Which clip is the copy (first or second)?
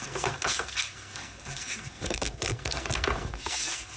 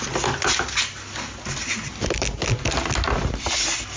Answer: first